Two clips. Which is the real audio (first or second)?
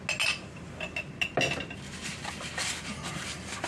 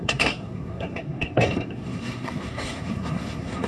first